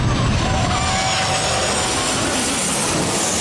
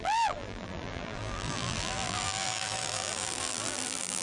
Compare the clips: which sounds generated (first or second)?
second